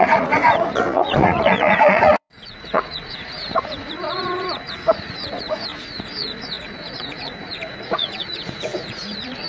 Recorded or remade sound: remade